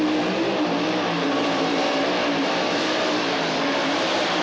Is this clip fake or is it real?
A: fake